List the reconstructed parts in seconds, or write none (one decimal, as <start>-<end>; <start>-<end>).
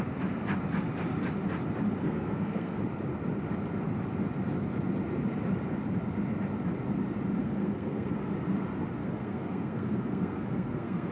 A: 2.0-2.8; 7.4-8.3; 9.0-11.1